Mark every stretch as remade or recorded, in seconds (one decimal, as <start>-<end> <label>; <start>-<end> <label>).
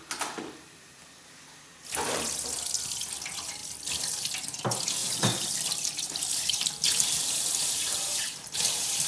0.0-5.0 recorded; 5.0-9.1 remade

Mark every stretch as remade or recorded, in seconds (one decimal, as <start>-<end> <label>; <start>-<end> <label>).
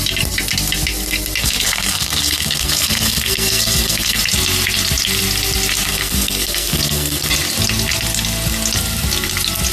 0.0-1.4 recorded; 1.4-4.2 remade; 4.2-5.9 recorded; 5.9-7.3 remade; 7.3-9.7 recorded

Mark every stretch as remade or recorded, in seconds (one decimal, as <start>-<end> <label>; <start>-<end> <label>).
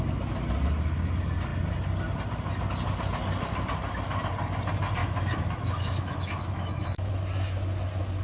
0.0-5.0 recorded; 5.0-7.1 remade; 7.1-8.2 recorded